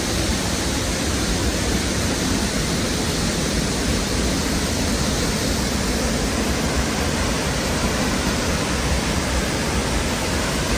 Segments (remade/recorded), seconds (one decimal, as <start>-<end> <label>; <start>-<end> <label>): 0.0-9.8 remade; 9.8-10.8 recorded